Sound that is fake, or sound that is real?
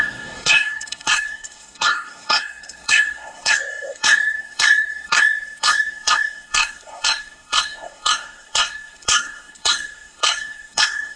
fake